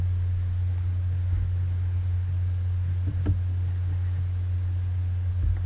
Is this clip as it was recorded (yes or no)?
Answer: yes